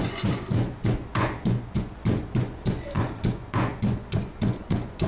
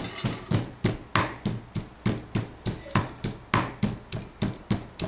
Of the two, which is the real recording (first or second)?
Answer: second